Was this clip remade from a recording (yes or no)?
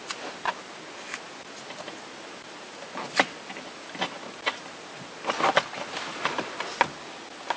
no